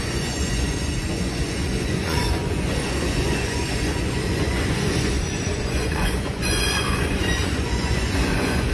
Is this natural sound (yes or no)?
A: no